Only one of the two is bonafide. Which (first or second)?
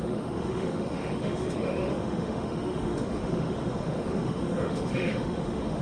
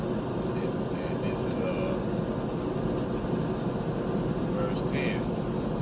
second